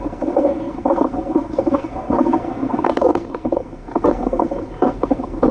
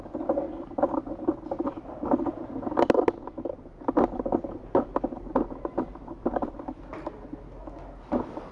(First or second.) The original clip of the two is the second